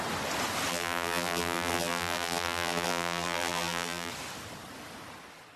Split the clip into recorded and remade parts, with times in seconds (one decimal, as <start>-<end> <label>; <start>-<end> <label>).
0.0-0.7 recorded; 0.7-4.1 remade; 4.1-5.6 recorded